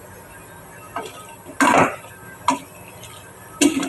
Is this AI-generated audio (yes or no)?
no